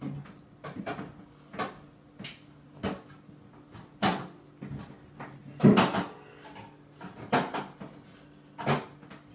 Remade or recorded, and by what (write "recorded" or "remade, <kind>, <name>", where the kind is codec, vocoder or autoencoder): recorded